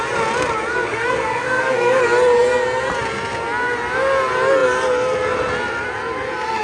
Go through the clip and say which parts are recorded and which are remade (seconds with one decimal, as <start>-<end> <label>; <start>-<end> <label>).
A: 0.0-0.7 recorded; 0.7-2.0 remade; 2.0-6.6 recorded